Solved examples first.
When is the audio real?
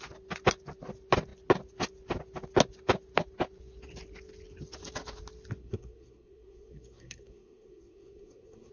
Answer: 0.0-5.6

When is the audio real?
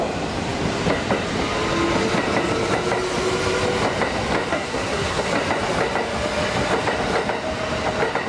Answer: 0.0-4.5; 5.3-8.3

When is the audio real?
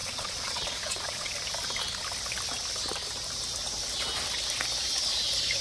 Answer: 1.3-5.6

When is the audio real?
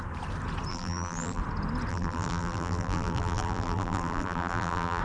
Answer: 0.0-0.7; 1.4-1.9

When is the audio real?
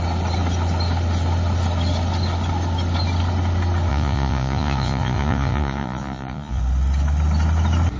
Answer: 0.0-3.9; 6.6-8.0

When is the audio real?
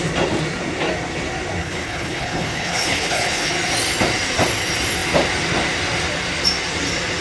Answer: 0.0-1.6; 3.5-7.2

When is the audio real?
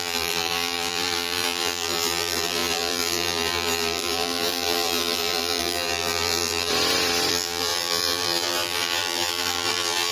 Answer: 6.7-7.3